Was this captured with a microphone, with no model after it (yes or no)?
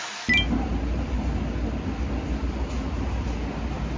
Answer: yes